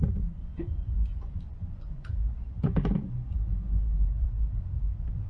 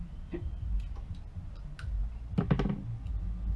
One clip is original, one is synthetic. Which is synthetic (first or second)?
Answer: first